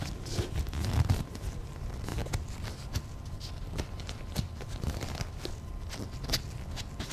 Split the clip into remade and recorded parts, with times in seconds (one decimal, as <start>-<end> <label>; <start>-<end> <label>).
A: 0.0-7.1 recorded